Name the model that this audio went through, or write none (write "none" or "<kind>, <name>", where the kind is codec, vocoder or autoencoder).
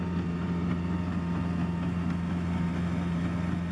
none